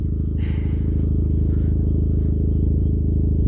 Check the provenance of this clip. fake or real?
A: real